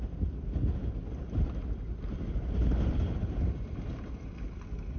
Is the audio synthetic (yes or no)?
no